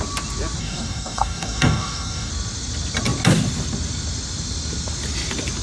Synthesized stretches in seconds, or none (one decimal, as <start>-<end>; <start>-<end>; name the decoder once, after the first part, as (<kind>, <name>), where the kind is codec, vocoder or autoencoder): 0.6-2.3 (codec, DAC)